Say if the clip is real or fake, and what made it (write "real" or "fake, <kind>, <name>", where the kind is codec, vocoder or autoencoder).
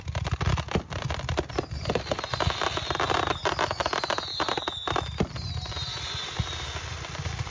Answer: real